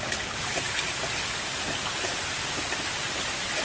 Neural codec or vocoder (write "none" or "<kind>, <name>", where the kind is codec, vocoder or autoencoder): none